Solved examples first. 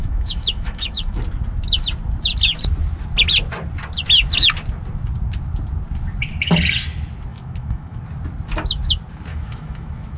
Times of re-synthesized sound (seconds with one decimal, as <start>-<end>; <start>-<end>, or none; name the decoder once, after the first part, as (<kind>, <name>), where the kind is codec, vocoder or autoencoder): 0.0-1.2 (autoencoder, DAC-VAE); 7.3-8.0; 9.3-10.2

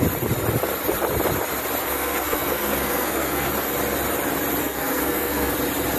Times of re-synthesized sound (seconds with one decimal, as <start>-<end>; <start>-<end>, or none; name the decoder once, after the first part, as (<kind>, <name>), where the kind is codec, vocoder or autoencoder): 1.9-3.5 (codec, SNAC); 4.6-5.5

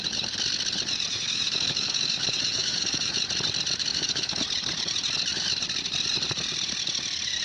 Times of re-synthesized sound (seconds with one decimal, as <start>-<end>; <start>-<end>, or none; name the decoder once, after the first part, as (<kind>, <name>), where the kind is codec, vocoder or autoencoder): 1.1-3.2 (autoencoder, DAC-VAE); 3.9-4.4